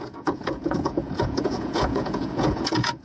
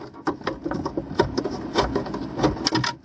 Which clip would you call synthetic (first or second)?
first